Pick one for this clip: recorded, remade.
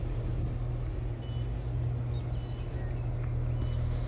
recorded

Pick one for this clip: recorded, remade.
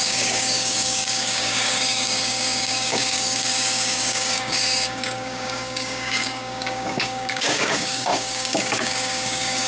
remade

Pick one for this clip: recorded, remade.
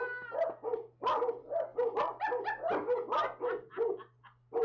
recorded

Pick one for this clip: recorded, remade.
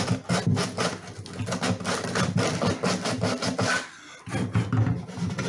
recorded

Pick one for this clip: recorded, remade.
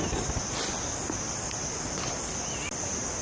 recorded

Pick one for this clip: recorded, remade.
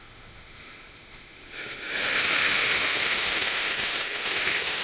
remade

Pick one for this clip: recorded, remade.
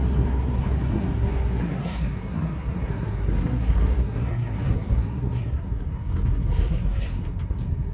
remade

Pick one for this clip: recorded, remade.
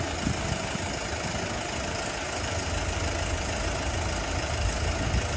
recorded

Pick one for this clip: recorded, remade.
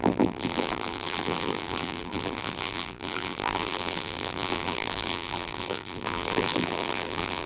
remade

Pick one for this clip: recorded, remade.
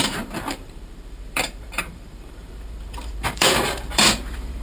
remade